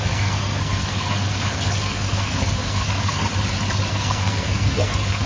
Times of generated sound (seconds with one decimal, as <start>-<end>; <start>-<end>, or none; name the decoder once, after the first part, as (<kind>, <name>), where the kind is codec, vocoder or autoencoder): 0.0-3.3 (codec, SNAC); 3.9-5.3